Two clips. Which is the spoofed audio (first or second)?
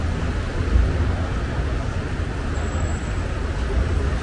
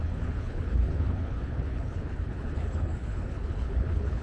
second